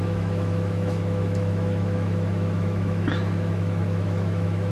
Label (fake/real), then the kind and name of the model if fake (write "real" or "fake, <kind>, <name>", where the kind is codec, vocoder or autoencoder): fake, autoencoder, DAC-VAE